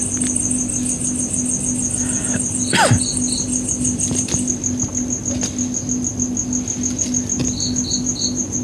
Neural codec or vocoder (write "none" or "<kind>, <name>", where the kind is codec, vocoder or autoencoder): none